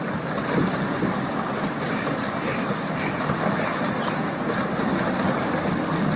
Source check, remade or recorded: recorded